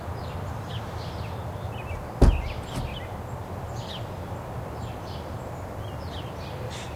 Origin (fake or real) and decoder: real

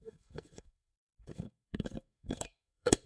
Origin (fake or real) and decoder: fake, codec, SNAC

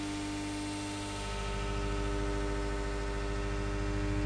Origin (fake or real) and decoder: real